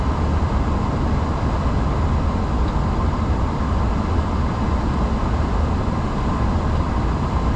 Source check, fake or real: real